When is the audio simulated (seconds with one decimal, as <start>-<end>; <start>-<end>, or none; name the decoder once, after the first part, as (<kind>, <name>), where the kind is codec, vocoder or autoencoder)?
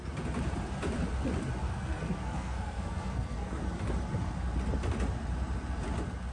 1.6-3.6 (codec, SNAC)